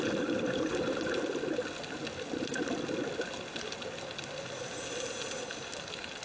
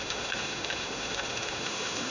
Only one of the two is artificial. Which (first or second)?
second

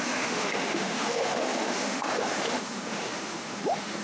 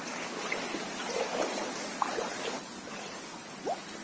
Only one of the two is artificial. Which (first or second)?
first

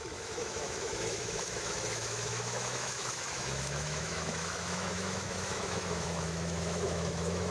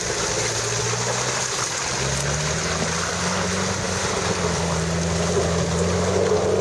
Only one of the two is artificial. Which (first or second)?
first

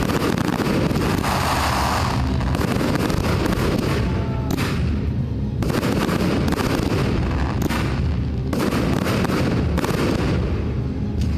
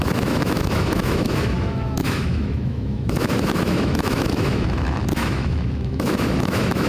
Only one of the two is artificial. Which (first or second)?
second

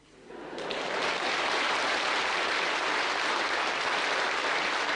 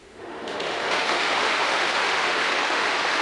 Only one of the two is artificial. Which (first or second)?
second